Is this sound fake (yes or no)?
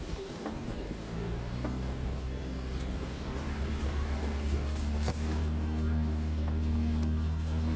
yes